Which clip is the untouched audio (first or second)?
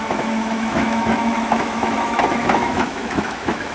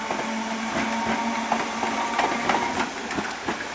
second